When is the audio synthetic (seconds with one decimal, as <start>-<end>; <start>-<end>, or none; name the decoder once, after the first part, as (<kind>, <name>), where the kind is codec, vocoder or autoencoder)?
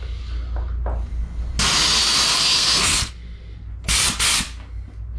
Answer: 2.3-3.1 (codec, SNAC)